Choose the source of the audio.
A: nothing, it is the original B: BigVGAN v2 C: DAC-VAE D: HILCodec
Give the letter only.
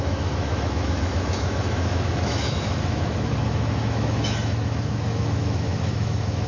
C